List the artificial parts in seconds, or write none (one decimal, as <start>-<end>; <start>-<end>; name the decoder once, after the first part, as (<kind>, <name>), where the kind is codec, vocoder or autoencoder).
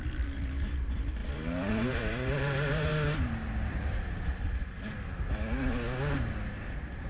0.0-2.9 (vocoder, BigVGAN v2)